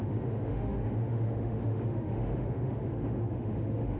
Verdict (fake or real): fake